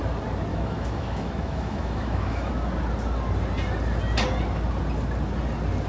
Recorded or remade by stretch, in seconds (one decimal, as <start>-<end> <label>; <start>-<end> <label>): 0.0-0.5 recorded; 0.5-2.5 remade; 2.5-5.9 recorded